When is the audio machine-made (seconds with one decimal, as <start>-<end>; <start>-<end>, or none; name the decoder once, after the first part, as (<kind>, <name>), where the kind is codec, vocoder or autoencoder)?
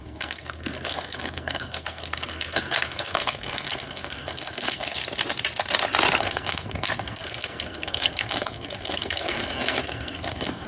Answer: 0.0-5.0 (codec, SNAC); 6.2-10.7